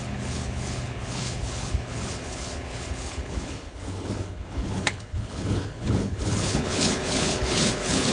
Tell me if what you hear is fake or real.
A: fake